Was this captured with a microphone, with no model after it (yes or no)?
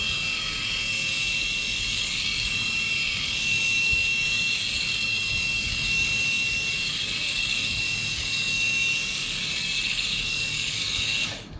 no